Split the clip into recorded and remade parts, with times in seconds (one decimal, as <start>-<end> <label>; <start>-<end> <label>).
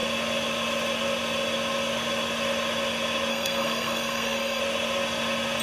0.0-3.3 recorded; 3.3-4.6 remade; 4.6-5.6 recorded